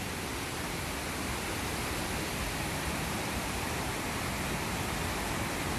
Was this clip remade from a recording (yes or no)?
no